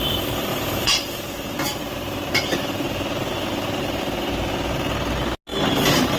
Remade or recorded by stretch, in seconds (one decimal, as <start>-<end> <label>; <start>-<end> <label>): 0.0-0.5 recorded; 0.5-4.0 remade; 4.0-5.5 recorded; 5.5-6.2 remade